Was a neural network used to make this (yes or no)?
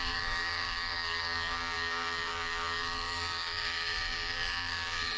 yes